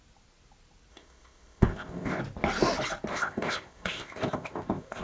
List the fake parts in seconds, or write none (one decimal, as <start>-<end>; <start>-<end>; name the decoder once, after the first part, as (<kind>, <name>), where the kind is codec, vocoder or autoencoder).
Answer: 0.9-2.2 (codec, ZipCodec); 3.1-5.0